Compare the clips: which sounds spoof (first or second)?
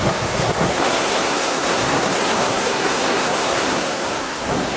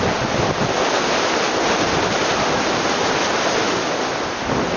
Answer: first